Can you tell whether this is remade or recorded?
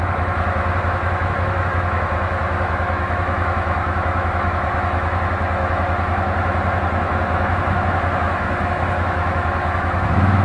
remade